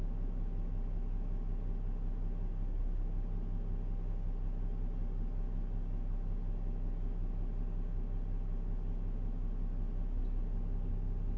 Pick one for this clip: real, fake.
real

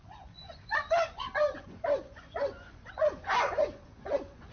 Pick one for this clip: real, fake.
fake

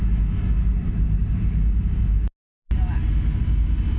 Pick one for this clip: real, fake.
real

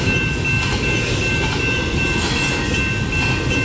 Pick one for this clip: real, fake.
real